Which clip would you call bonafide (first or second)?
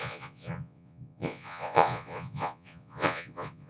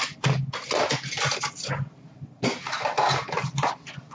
second